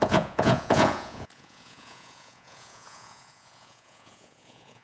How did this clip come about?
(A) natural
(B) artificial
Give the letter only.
B